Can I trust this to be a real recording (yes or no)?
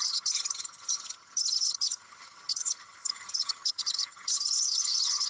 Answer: no